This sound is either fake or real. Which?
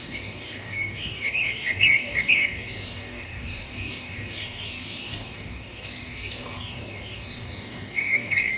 fake